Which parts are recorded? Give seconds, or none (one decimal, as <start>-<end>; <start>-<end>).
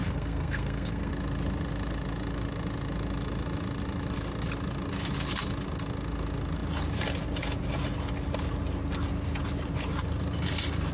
1.1-10.9